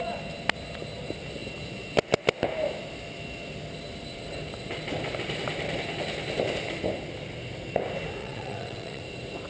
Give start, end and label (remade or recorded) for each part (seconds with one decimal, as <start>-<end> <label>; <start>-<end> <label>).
0.0-8.2 recorded; 8.2-9.0 remade; 9.0-9.5 recorded